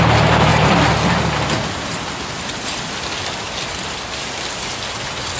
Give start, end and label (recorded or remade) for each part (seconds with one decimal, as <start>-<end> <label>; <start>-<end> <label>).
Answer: 0.0-5.4 recorded